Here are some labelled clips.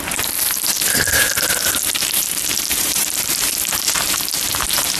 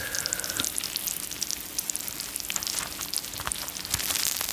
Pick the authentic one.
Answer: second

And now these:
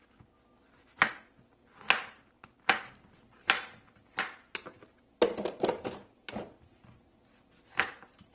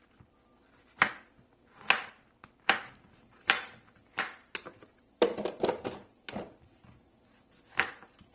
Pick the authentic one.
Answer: first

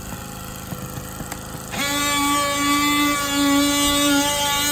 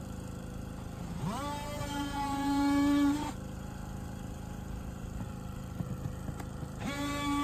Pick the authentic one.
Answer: first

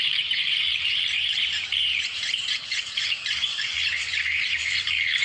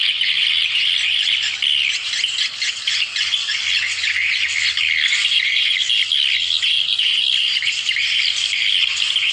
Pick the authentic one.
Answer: second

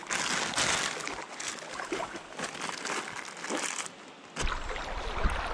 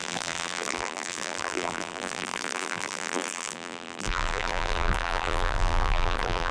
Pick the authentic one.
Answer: first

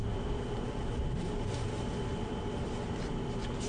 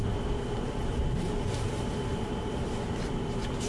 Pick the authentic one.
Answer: first